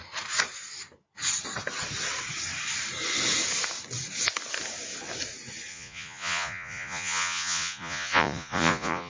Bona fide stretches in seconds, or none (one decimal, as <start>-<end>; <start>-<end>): 0.0-5.7